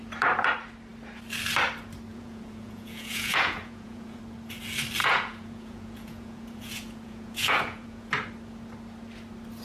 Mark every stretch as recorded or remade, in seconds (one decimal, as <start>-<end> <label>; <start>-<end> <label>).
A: 0.0-2.1 recorded; 2.1-4.2 remade; 4.2-5.0 recorded; 5.0-8.1 remade; 8.1-9.6 recorded